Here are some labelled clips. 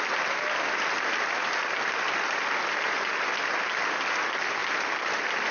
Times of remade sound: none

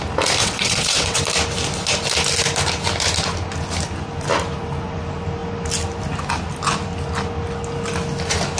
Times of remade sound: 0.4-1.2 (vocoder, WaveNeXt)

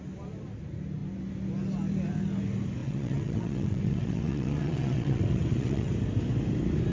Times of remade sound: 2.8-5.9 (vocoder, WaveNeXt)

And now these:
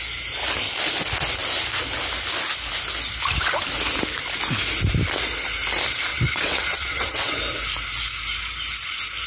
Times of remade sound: 6.1-7.4 (vocoder, WaveNeXt)

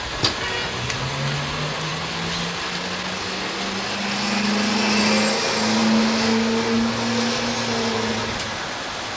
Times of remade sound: none

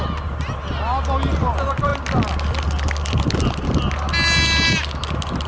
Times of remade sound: none

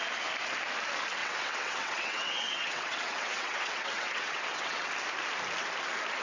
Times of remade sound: 1.2-4.9 (vocoder, WaveNeXt)